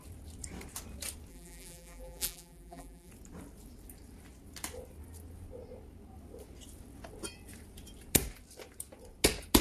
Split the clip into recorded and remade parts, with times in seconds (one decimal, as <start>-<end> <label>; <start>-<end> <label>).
0.0-1.3 recorded; 1.3-3.1 remade; 3.1-9.6 recorded